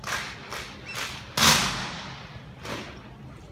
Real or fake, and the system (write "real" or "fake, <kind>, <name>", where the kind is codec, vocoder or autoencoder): real